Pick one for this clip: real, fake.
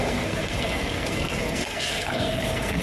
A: fake